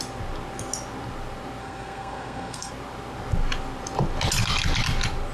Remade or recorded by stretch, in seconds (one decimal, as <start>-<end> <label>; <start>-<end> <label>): 0.0-1.6 recorded; 1.6-2.7 remade; 2.7-5.3 recorded